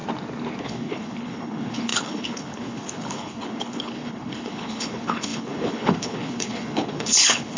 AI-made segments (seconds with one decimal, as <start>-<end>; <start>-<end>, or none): 0.6-7.6